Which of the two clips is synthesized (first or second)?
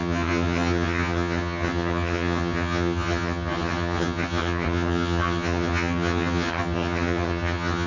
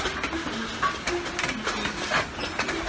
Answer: first